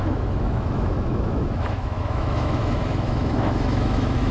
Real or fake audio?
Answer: fake